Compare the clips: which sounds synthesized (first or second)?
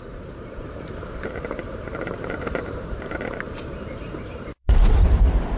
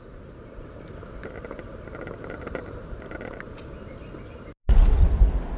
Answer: first